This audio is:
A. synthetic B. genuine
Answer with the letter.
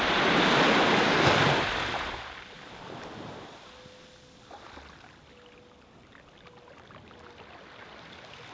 B